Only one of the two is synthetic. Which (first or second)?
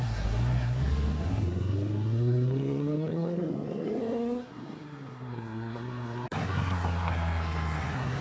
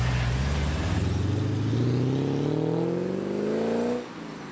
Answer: first